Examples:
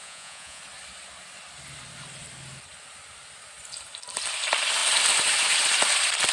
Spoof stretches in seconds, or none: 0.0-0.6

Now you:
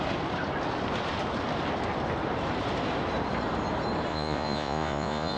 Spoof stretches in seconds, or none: 4.1-5.4